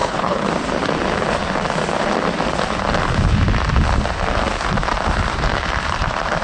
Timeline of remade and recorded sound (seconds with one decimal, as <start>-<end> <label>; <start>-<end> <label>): 0.0-0.5 remade; 0.5-6.4 recorded